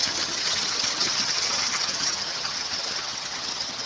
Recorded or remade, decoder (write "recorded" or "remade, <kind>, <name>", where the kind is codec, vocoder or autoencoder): remade, vocoder, HiFi-GAN